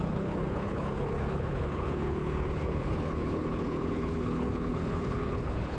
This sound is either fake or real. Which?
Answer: fake